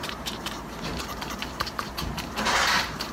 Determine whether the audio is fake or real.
fake